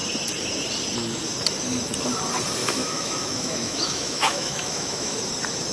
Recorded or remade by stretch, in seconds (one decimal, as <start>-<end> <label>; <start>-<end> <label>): 0.0-2.6 recorded; 2.6-5.2 remade; 5.2-5.7 recorded